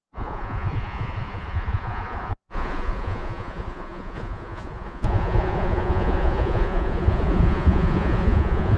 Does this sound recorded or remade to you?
remade